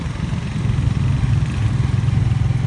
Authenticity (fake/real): real